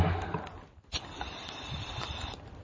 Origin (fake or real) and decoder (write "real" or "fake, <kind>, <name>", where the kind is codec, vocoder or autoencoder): real